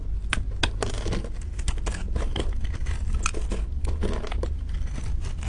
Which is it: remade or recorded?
recorded